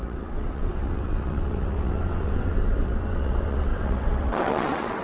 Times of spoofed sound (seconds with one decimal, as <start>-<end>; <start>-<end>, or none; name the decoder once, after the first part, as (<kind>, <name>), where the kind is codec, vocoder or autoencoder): 0.0-5.0 (vocoder, WaveNeXt)